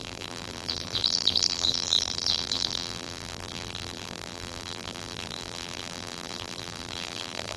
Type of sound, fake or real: fake